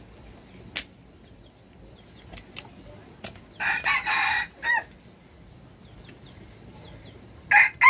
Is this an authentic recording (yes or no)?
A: yes